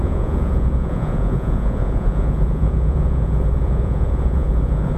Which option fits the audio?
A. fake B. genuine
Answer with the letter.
A